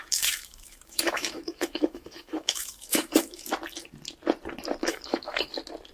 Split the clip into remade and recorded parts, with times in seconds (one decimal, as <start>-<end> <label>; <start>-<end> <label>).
0.0-3.5 remade; 3.5-4.8 recorded; 4.8-5.5 remade; 5.5-5.9 recorded